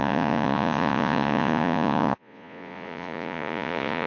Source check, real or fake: fake